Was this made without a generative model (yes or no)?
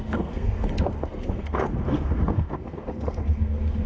no